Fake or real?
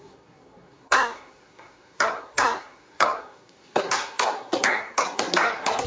fake